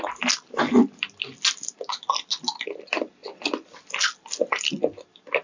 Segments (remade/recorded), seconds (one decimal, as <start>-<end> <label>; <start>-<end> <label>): 0.0-5.4 recorded